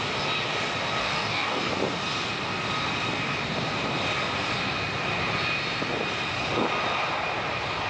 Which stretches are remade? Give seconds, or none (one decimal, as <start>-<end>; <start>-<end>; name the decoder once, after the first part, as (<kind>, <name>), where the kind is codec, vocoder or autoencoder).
1.0-1.7 (codec, DAC)